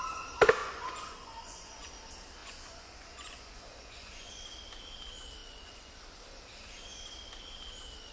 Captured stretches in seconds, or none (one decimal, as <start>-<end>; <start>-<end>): 0.0-0.6; 1.9-2.4; 4.3-5.4; 6.0-8.1